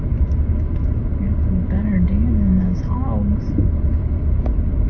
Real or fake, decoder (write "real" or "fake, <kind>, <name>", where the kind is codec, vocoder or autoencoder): real